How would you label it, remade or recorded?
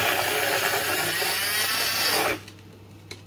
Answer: recorded